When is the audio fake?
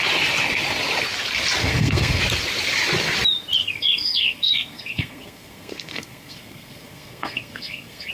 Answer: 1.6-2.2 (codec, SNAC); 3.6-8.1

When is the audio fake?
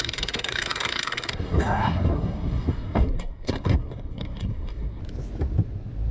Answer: 0.0-5.0 (codec, SNAC)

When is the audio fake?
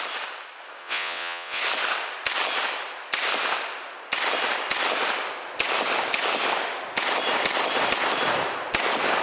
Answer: 0.8-1.6 (vocoder, WaveNeXt)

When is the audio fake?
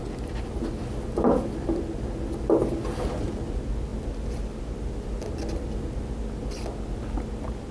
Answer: none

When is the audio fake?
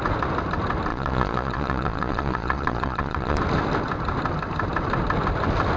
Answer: 0.9-3.4 (vocoder, Vocos)